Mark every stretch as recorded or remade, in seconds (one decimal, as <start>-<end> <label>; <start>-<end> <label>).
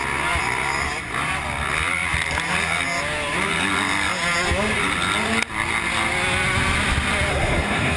0.0-7.3 recorded; 7.3-8.0 remade